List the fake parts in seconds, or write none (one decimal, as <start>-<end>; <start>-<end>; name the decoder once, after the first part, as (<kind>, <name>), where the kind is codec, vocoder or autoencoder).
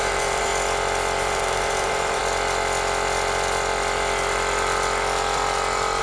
0.0-0.5 (vocoder, BigVGAN v2); 1.2-2.2